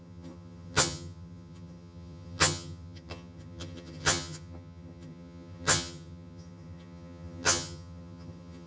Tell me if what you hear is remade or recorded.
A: remade